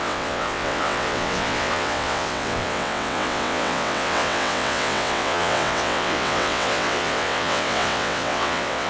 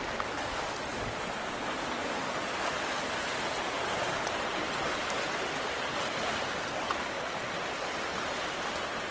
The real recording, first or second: second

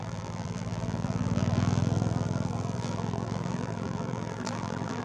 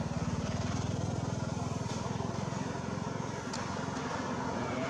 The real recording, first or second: second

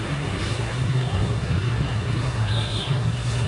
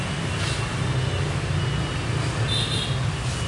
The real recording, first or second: second